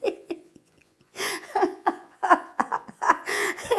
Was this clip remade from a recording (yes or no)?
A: yes